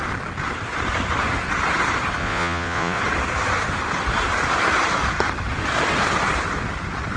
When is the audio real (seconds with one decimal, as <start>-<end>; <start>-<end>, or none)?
0.0-2.2; 3.0-7.2